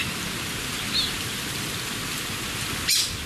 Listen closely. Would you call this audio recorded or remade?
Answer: recorded